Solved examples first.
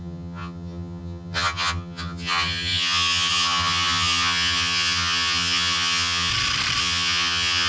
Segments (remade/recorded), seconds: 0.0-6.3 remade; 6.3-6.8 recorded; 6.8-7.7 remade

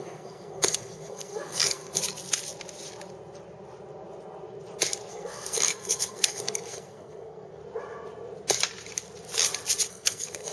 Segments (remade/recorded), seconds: 0.0-2.0 remade; 2.0-5.1 recorded; 5.1-7.6 remade; 7.6-9.9 recorded; 9.9-10.5 remade

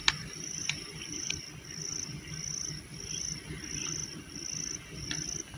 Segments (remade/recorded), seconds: 0.0-1.3 remade; 1.3-5.6 recorded

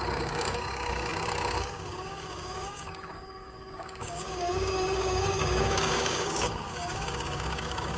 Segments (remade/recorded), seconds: 0.0-8.0 remade